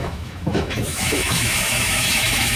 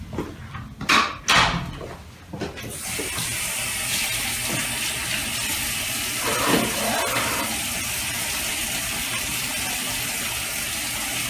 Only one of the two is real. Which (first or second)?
second